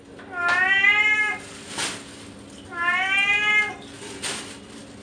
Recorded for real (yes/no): yes